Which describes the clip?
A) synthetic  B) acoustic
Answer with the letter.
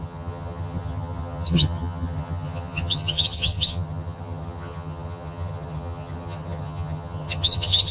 A